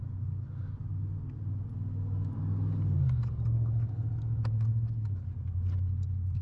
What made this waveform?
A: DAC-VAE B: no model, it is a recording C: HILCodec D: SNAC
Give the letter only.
B